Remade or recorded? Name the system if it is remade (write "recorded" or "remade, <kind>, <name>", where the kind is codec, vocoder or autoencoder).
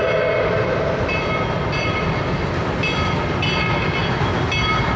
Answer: recorded